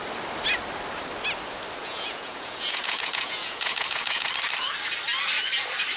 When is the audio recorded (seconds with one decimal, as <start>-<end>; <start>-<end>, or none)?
0.0-1.8; 4.3-6.0